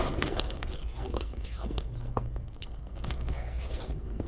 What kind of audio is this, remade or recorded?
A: remade